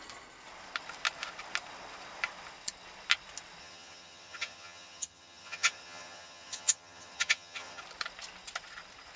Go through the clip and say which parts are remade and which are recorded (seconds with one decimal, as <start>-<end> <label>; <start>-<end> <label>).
0.0-3.6 recorded; 3.6-7.8 remade; 7.8-9.2 recorded